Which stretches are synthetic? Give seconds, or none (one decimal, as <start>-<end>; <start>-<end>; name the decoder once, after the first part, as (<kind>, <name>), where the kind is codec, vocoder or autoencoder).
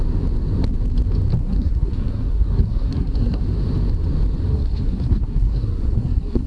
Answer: 1.4-3.4 (codec, SNAC); 4.5-6.5